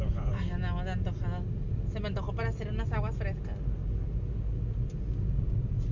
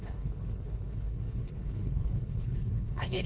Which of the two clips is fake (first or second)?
second